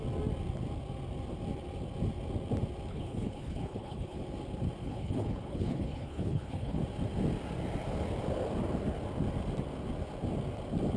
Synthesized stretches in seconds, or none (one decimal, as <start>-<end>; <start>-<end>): 2.9-4.2; 4.8-6.8